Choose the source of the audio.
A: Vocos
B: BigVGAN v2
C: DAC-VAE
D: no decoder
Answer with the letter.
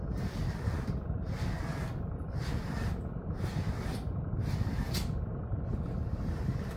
D